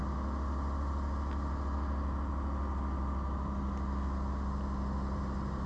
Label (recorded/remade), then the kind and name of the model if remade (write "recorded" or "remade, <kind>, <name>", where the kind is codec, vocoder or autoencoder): recorded